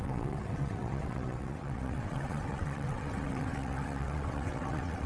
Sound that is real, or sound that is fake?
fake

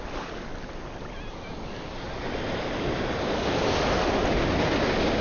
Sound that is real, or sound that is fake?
real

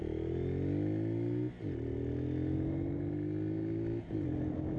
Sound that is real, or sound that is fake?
real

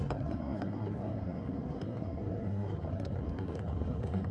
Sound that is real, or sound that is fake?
fake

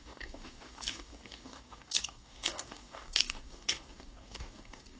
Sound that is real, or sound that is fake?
fake